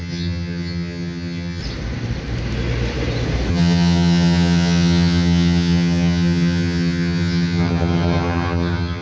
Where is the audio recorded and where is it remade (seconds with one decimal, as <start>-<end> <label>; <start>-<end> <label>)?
0.0-1.6 remade; 1.6-3.5 recorded; 3.5-9.0 remade